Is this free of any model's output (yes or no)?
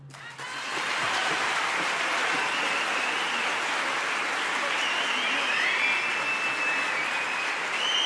yes